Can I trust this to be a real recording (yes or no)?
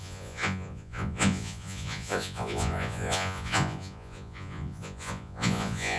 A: no